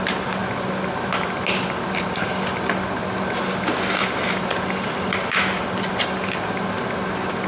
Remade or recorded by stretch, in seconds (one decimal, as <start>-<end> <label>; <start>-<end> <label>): 0.0-7.5 recorded